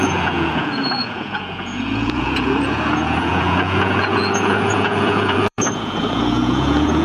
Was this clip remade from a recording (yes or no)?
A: yes